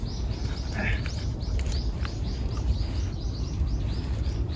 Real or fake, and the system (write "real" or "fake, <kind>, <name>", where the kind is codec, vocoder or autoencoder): real